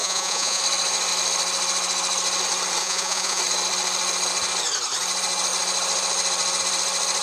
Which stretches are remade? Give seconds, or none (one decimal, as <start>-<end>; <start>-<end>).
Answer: 0.0-0.6; 2.8-3.4